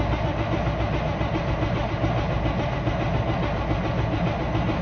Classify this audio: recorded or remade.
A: recorded